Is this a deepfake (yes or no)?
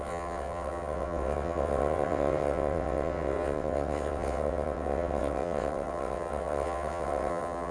yes